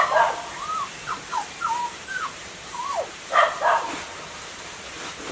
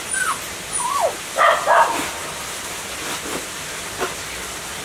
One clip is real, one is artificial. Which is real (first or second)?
second